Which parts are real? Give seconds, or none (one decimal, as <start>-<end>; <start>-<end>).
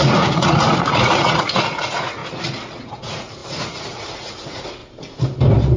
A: 2.2-2.9; 4.8-5.8